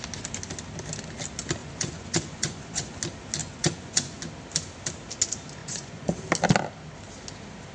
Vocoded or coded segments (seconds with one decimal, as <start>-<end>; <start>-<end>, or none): 1.6-3.0; 3.4-4.2; 5.6-6.2